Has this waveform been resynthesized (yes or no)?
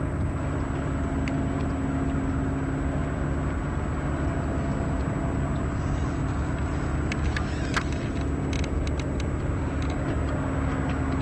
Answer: no